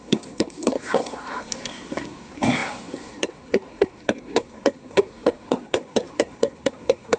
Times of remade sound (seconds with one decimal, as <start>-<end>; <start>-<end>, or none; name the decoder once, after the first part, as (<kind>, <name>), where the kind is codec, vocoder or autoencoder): 0.0-7.2 (codec, SNAC)